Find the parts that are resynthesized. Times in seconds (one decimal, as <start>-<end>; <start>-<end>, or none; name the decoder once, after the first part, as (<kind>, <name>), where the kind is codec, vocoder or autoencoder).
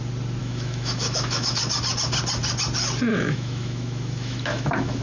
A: 0.4-1.6 (autoencoder, DAC-VAE); 3.1-5.0